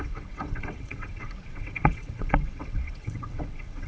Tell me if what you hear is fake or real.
fake